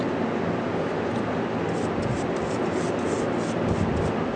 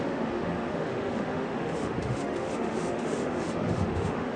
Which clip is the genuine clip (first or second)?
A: first